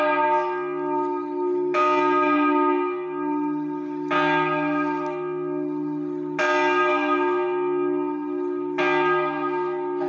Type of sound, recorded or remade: recorded